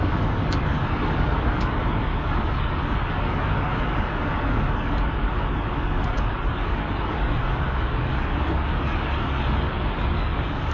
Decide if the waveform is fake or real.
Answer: fake